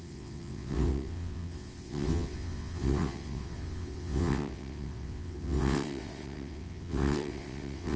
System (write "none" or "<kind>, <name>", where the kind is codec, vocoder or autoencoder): vocoder, WaveNeXt